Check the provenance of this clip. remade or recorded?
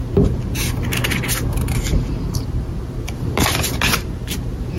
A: recorded